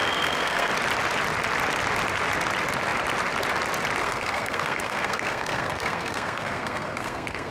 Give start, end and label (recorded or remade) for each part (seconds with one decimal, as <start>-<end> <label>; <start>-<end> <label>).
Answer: 0.0-0.7 remade; 0.7-4.0 recorded; 4.0-7.5 remade